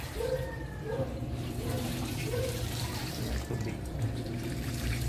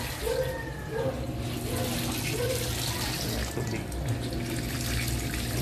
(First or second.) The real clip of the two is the second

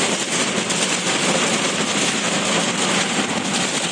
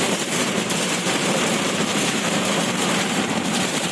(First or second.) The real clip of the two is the first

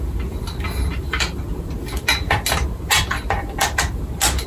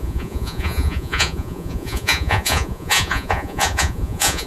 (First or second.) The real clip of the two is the first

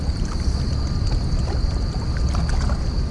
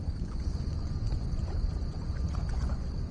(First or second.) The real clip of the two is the first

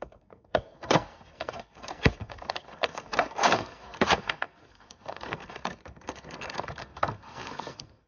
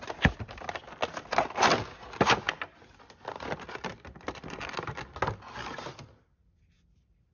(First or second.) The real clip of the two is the second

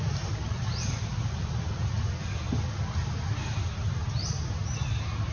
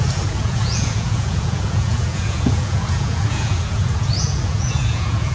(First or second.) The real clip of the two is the first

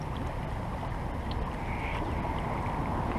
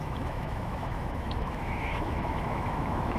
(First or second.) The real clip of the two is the first